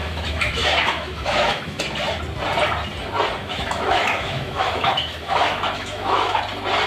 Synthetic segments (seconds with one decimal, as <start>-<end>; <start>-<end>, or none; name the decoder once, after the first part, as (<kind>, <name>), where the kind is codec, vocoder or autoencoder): 0.0-1.8 (autoencoder, DAC-VAE); 3.4-6.4